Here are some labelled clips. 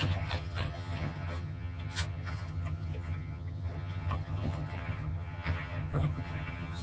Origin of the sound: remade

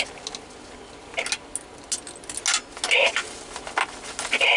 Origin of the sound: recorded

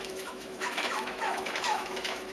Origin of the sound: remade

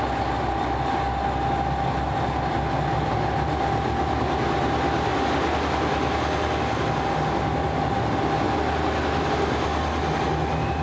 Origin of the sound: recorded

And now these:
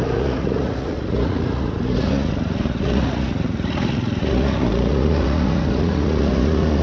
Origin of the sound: remade